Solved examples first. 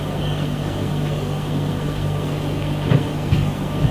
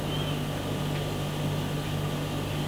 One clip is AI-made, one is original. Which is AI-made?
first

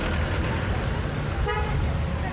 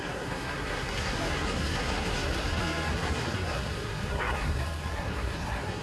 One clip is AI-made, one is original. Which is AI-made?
second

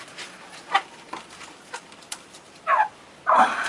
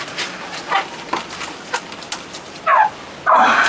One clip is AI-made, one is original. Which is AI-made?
first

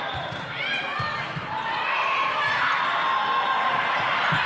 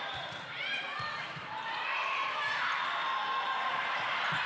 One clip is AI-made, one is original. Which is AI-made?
second